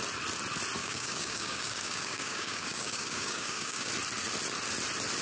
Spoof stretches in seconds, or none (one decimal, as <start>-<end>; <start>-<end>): 0.8-3.9